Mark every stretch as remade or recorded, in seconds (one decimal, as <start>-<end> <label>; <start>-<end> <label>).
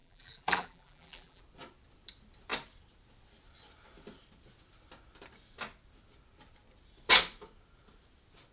0.0-1.4 remade; 1.4-8.5 recorded